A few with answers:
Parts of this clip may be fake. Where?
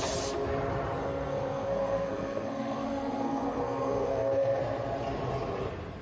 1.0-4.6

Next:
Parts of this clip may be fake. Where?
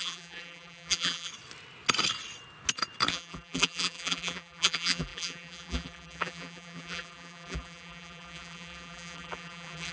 0.0-1.3; 3.1-9.9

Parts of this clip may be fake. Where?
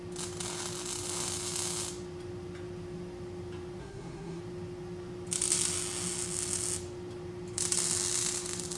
3.8-4.4